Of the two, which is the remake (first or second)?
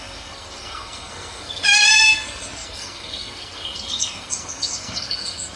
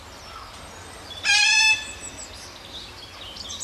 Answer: first